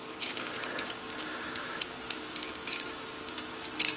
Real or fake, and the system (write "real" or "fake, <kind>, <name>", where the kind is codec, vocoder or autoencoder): fake, codec, DAC